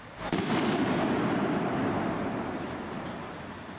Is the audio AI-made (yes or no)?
no